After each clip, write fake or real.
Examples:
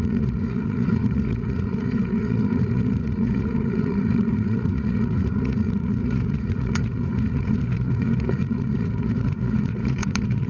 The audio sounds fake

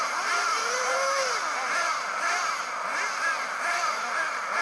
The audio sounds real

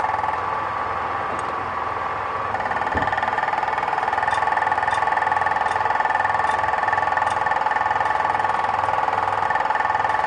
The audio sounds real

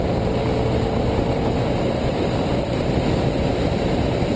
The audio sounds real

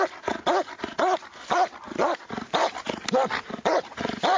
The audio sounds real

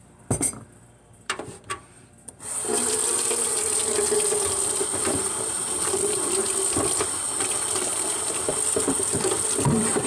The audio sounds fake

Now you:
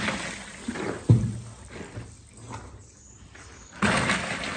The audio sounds real